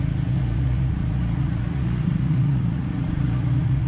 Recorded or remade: remade